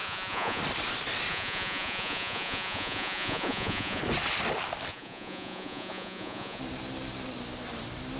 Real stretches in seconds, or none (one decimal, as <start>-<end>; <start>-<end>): 0.6-1.3; 4.0-4.9; 6.6-8.2